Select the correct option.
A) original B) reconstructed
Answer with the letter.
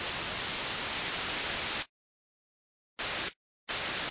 A